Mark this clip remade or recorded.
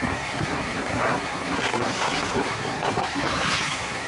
remade